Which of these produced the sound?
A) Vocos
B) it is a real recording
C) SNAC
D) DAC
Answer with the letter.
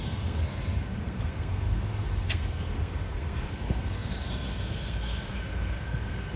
C